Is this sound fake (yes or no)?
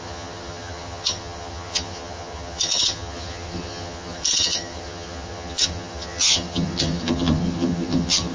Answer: yes